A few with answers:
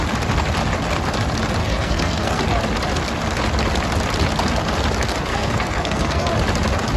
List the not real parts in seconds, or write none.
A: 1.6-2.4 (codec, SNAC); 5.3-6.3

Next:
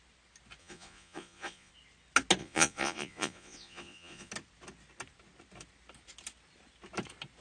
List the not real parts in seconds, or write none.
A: 0.6-1.7 (vocoder, Vocos); 2.4-4.3

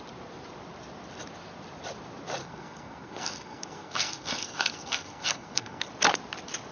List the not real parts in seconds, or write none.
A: 2.4-5.9 (codec, SNAC)

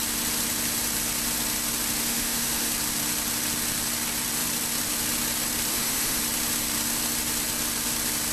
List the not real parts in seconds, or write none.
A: 2.0-2.7 (autoencoder, DAC-VAE); 5.7-6.2

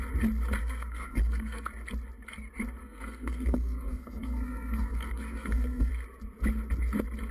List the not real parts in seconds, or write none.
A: 0.6-1.7 (codec, SNAC); 2.8-5.9

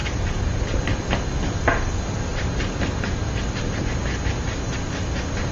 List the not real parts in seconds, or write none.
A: 0.0-0.8 (vocoder, BigVGAN v2); 2.3-3.6

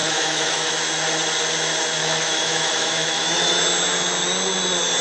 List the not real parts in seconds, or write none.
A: 0.0-0.7 (autoencoder, DAC-VAE); 2.0-3.6